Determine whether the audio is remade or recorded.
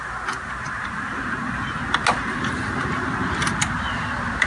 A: recorded